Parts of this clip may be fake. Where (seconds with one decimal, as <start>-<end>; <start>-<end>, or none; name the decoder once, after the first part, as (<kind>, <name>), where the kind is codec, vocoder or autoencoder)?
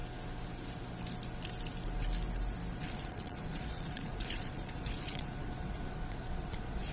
2.8-6.9 (vocoder, Vocos)